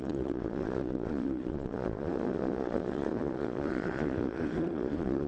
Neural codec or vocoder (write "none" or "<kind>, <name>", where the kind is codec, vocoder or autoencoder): vocoder, Vocos